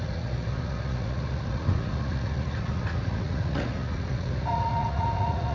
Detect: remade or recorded remade